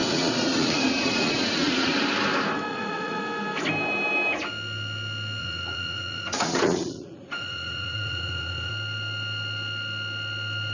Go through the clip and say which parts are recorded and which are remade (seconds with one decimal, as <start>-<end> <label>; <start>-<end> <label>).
0.0-1.9 remade; 1.9-2.7 recorded; 2.7-3.2 remade; 3.2-5.4 recorded; 5.4-8.7 remade; 8.7-10.7 recorded